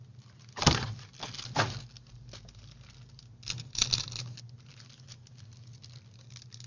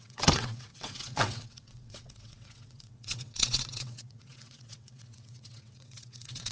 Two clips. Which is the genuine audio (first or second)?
first